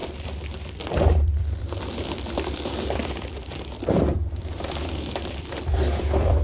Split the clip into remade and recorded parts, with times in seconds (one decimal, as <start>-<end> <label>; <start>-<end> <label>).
0.0-6.4 remade